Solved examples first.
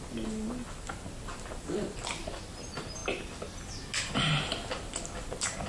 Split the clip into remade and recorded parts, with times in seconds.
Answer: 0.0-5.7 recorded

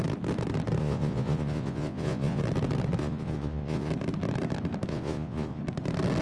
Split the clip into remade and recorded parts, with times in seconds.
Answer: 0.0-0.8 recorded; 0.8-2.4 remade; 2.4-3.0 recorded; 3.0-3.9 remade; 3.9-4.9 recorded; 4.9-5.6 remade; 5.6-6.2 recorded

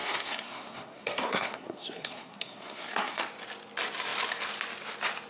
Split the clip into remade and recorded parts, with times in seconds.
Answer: 0.0-3.2 remade; 3.2-5.3 recorded

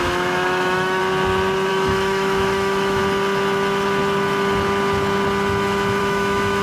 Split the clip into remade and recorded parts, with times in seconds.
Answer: 0.0-1.0 remade; 1.0-1.7 recorded; 1.7-3.0 remade; 3.0-6.0 recorded; 6.0-6.6 remade

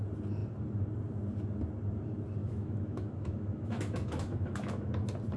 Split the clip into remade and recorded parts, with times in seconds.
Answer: 0.0-2.4 recorded; 2.4-4.9 remade; 4.9-5.4 recorded

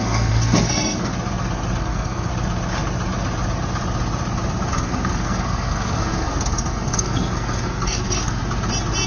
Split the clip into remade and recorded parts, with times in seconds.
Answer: 0.0-1.1 remade; 1.1-1.8 recorded; 1.8-2.3 remade; 2.3-4.7 recorded; 4.7-8.4 remade; 8.4-9.1 recorded

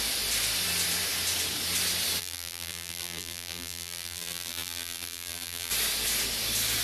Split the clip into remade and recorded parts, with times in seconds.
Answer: 0.0-2.2 recorded; 2.2-5.7 remade; 5.7-6.8 recorded

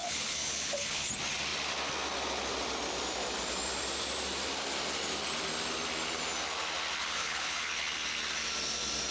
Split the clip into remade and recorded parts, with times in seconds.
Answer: 0.0-1.1 remade; 1.1-7.0 recorded; 7.0-7.7 remade; 7.7-9.1 recorded